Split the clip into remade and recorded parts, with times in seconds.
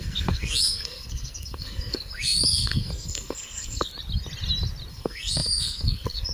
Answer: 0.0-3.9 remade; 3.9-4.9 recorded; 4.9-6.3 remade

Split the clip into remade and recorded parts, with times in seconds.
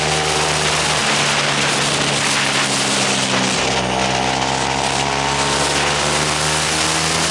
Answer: 0.0-7.3 recorded